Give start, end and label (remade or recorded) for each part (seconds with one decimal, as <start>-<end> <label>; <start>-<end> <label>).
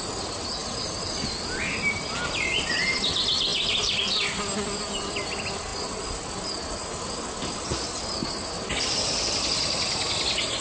0.0-0.6 recorded; 0.6-1.3 remade; 1.3-3.5 recorded; 3.5-4.0 remade; 4.0-10.6 recorded